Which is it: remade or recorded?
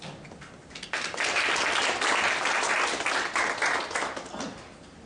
recorded